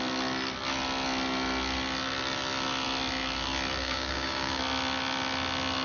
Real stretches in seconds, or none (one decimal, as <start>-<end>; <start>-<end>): 0.0-3.8; 4.6-5.8